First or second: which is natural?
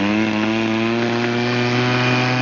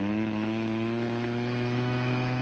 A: first